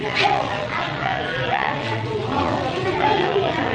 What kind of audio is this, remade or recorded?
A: remade